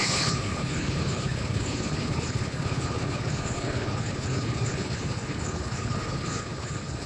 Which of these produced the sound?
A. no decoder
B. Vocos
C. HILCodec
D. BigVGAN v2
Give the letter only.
C